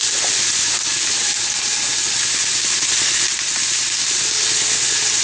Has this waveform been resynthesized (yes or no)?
no